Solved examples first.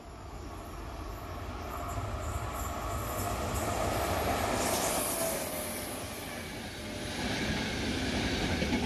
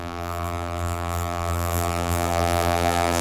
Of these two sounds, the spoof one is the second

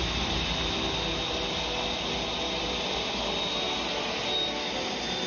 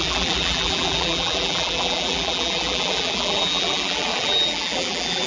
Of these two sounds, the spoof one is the second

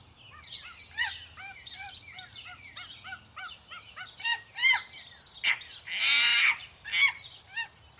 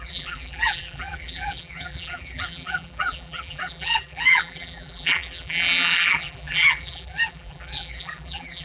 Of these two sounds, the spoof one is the second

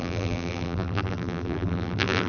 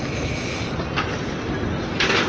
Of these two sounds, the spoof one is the first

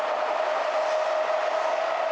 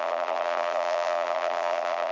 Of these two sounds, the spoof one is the second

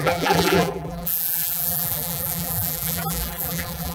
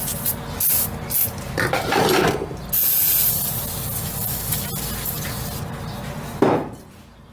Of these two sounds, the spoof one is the first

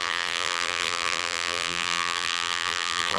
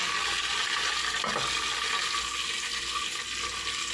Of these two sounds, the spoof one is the first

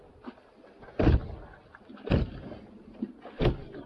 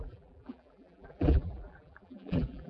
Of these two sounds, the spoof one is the second